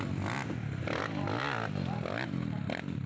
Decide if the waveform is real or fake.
real